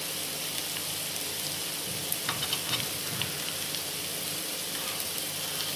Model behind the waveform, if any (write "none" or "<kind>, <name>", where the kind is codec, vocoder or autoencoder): vocoder, BigVGAN v2